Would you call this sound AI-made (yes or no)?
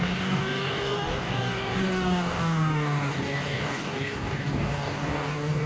yes